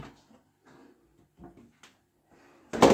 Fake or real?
real